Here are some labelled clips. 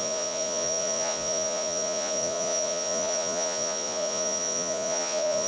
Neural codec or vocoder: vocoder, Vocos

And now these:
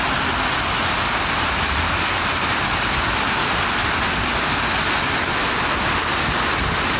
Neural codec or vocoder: none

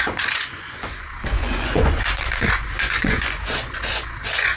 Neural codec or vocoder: vocoder, Vocos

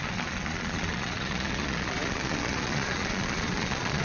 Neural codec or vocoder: vocoder, Vocos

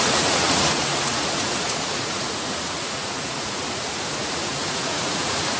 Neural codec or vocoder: vocoder, Vocos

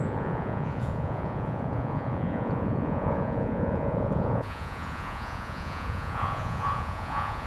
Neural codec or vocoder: vocoder, Vocos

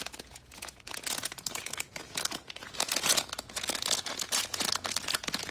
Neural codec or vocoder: vocoder, Vocos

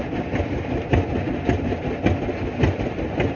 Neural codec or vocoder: none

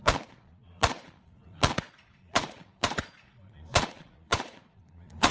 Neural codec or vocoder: vocoder, Vocos